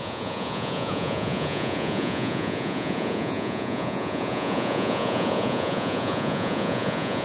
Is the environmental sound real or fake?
fake